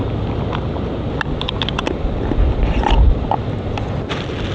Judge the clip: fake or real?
real